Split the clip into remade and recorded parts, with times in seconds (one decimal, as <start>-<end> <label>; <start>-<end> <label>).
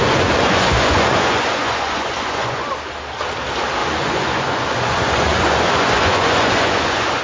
0.0-2.7 remade; 2.7-3.8 recorded; 3.8-7.2 remade